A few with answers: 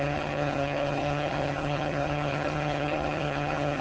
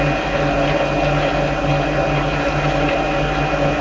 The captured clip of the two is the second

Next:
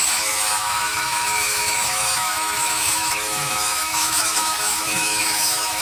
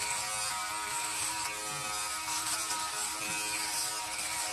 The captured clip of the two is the second